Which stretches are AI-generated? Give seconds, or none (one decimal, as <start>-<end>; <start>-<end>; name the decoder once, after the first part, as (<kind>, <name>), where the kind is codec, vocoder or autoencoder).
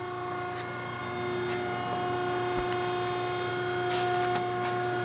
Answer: none